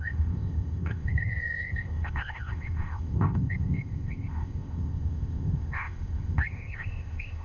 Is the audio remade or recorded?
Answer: remade